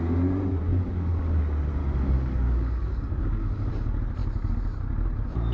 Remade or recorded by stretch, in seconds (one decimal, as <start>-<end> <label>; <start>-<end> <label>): 0.0-0.7 recorded; 0.7-1.4 remade; 1.4-1.8 recorded; 1.8-3.7 remade; 3.7-5.5 recorded

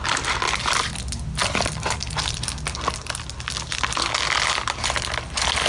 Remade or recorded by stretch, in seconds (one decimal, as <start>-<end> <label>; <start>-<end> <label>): 0.0-5.7 recorded